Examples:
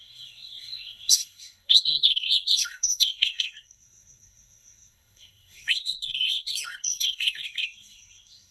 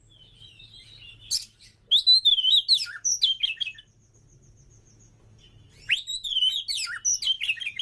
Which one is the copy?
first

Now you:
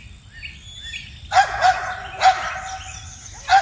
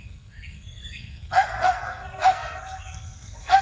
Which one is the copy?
second